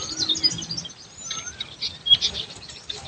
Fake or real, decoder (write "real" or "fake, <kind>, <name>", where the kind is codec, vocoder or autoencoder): real